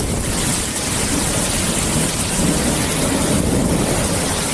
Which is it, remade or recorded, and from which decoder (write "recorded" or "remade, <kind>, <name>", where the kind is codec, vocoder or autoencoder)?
recorded